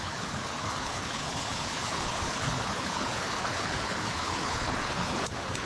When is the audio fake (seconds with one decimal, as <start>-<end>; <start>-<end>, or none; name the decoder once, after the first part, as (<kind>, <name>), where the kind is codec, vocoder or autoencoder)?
0.0-5.7 (codec, HILCodec)